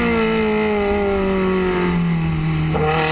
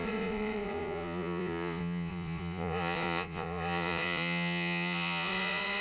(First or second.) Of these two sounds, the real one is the first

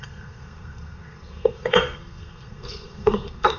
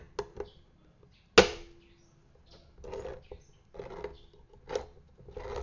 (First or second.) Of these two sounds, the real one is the second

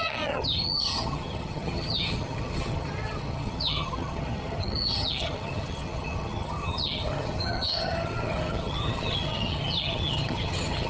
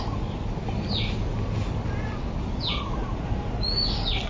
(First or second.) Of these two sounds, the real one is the second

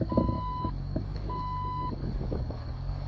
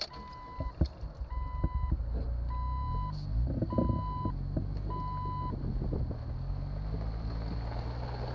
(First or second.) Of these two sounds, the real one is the second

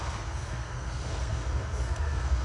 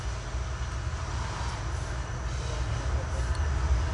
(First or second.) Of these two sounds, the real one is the second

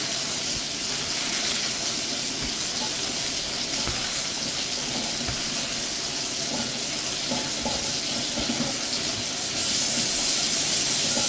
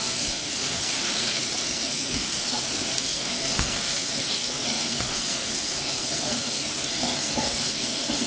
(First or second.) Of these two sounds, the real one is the first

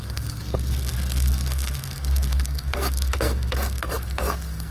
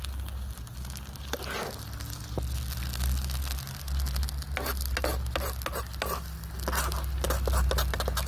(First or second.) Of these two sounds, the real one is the second